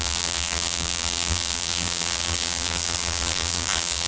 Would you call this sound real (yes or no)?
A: no